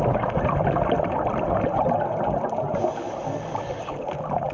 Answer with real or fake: real